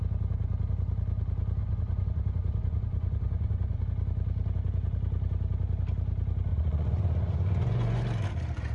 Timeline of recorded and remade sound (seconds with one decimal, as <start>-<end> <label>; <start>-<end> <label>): 0.0-1.6 recorded; 1.6-3.8 remade; 3.8-6.5 recorded; 6.5-8.0 remade; 8.0-8.7 recorded